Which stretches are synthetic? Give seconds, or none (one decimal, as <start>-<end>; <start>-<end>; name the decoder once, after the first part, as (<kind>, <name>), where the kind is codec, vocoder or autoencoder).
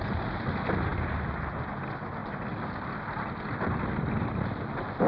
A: none